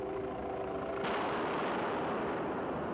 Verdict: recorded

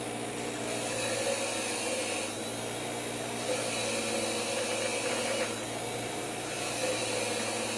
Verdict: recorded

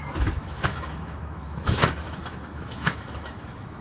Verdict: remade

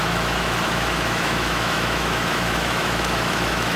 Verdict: remade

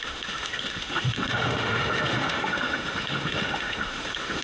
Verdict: remade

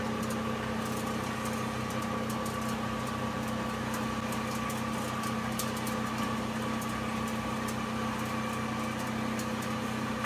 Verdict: recorded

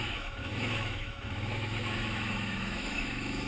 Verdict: remade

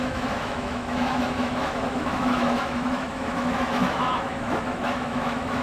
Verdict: remade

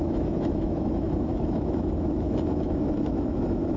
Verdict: remade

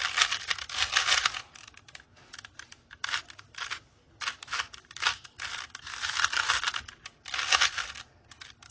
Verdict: recorded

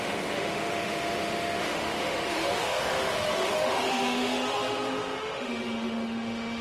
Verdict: remade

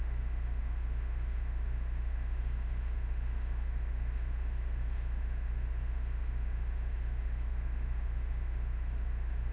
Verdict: remade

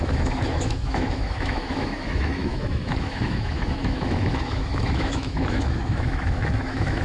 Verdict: remade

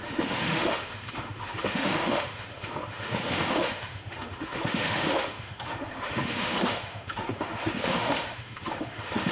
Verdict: remade